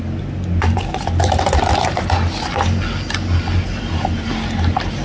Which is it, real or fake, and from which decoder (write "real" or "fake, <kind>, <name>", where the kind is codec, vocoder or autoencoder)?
real